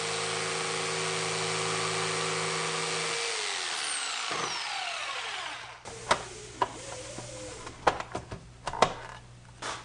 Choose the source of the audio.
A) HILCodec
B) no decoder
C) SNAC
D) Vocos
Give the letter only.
B